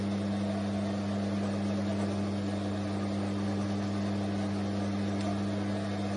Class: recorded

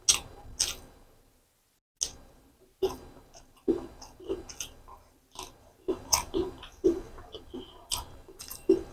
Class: recorded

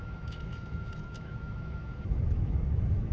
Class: remade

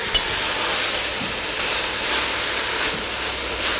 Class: recorded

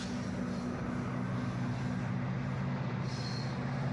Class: recorded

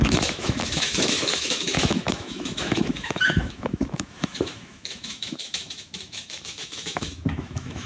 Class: remade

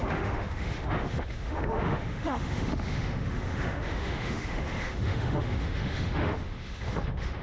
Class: remade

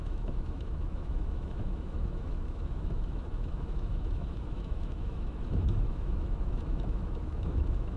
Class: remade